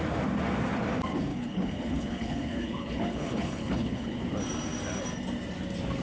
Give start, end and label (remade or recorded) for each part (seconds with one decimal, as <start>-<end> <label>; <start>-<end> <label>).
0.0-1.3 recorded; 1.3-4.2 remade; 4.2-6.0 recorded